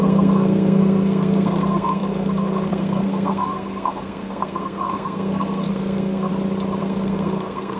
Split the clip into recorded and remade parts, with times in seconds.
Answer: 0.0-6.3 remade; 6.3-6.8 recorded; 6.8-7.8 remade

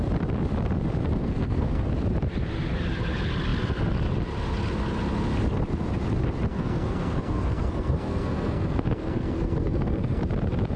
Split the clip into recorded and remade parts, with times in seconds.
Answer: 0.0-1.2 recorded; 1.2-1.9 remade; 1.9-6.5 recorded; 6.5-10.2 remade; 10.2-10.8 recorded

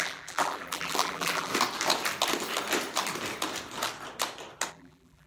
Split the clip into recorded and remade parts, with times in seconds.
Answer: 0.0-1.5 remade; 1.5-4.7 recorded; 4.7-5.3 remade